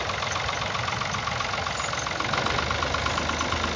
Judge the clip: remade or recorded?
recorded